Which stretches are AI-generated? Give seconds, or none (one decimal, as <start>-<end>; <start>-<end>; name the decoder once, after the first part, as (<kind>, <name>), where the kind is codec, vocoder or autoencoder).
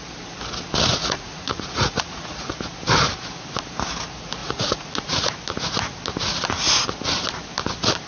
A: 0.9-2.5 (vocoder, Vocos); 4.4-5.3